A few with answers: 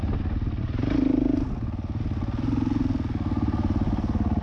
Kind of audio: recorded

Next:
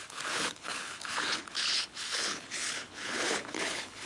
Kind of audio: remade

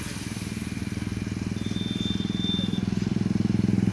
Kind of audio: recorded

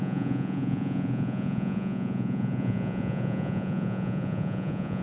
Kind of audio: remade